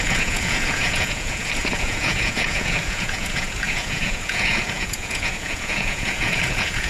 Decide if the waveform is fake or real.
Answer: fake